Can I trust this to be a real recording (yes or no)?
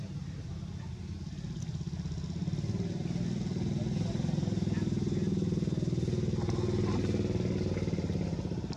yes